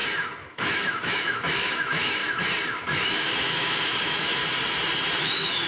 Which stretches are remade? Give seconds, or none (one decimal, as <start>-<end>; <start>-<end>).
0.5-2.2; 2.7-4.4; 5.2-5.7